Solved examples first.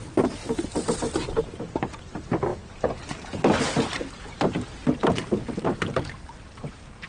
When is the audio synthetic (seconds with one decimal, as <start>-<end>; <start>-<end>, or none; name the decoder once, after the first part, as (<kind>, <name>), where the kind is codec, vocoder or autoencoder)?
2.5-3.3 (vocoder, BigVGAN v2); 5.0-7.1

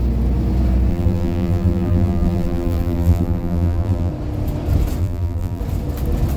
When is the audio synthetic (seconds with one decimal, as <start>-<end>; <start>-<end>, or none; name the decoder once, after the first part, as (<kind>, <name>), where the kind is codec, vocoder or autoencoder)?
0.9-4.1 (vocoder, BigVGAN v2); 5.0-5.6

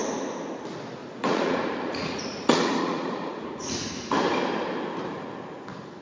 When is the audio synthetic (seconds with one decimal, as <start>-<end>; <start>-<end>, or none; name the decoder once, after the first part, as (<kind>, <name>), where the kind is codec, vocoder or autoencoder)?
1.0-3.9 (vocoder, Vocos)

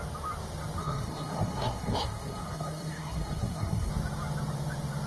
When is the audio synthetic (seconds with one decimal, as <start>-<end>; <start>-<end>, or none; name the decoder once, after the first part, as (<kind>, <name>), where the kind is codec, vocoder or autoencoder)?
0.8-3.9 (codec, SNAC)

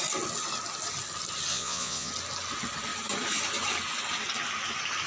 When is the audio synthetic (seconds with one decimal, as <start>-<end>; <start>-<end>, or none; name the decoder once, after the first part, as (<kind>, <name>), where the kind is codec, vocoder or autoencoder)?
1.5-2.1 (vocoder, Vocos)

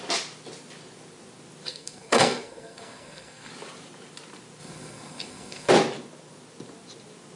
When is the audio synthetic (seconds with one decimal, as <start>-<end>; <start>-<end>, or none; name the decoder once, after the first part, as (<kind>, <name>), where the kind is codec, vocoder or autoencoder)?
1.7-3.5 (codec, SNAC); 4.6-5.7

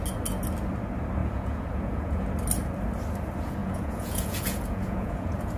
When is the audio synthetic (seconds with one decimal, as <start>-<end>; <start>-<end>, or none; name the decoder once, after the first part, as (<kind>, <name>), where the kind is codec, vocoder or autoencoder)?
1.2-2.2 (vocoder, Vocos); 3.6-5.6